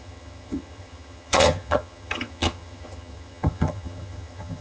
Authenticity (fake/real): fake